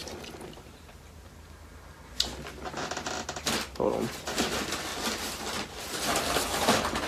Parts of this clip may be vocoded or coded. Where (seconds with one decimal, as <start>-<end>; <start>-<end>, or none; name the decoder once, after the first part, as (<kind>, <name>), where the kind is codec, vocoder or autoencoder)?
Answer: 0.0-1.3 (vocoder, BigVGAN v2)